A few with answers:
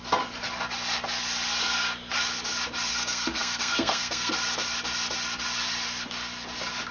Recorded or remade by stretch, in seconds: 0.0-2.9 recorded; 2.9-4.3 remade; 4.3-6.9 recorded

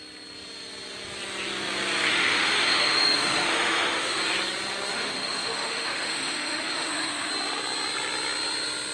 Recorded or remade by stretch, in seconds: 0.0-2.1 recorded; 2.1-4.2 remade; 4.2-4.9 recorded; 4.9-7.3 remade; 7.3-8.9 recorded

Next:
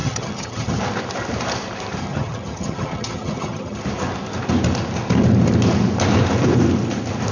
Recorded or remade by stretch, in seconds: 0.0-0.8 remade; 0.8-2.0 recorded; 2.0-3.8 remade; 3.8-7.3 recorded

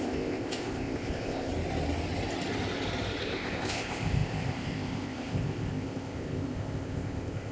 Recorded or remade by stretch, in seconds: 0.0-1.5 remade; 1.5-3.2 recorded; 3.2-7.5 remade

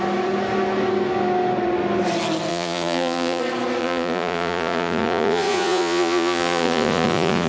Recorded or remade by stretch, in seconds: 0.0-2.5 recorded; 2.5-3.4 remade; 3.4-3.8 recorded; 3.8-7.5 remade

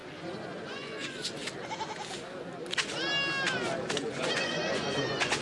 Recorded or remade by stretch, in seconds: 0.0-0.6 recorded; 0.6-1.4 remade; 1.4-4.0 recorded; 4.0-5.4 remade